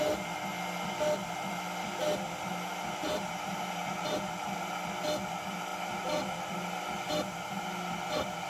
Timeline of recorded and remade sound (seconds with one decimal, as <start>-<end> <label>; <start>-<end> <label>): 0.0-3.0 recorded; 3.0-4.7 remade; 4.7-8.5 recorded